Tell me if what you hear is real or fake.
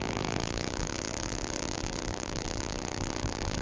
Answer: fake